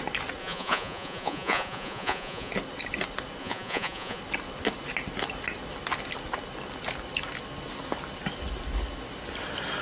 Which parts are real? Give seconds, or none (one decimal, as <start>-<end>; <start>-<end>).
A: 0.0-0.4; 2.5-3.4; 4.2-9.8